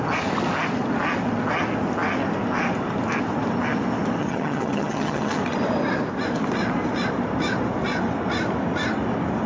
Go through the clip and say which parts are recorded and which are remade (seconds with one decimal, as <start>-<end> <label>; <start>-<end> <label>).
0.0-4.2 recorded; 4.2-5.4 remade; 5.4-9.5 recorded

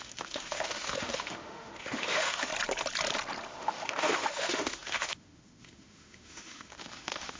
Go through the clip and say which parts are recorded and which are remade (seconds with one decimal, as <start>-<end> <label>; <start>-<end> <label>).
0.0-2.5 remade; 2.5-3.6 recorded; 3.6-7.4 remade

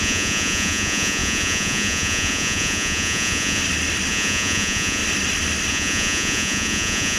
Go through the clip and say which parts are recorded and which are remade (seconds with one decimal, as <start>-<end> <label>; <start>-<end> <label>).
0.0-3.6 remade; 3.6-4.1 recorded; 4.1-5.0 remade; 5.0-5.7 recorded; 5.7-7.2 remade